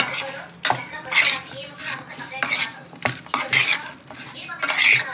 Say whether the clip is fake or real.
real